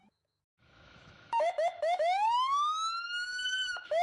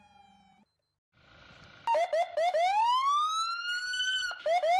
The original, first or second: second